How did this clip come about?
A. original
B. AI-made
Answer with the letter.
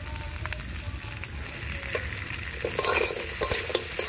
A